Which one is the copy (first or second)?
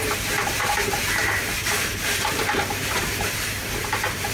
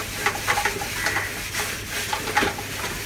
first